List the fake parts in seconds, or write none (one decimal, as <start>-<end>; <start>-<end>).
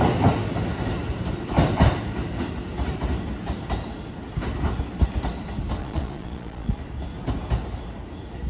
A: 5.8-6.8